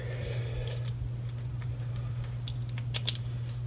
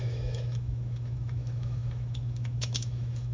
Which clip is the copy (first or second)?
second